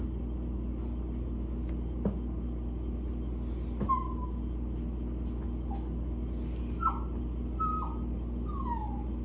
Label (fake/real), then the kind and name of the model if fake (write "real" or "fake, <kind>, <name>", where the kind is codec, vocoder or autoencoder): real